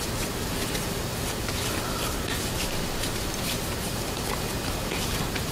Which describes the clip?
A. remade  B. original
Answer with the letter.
B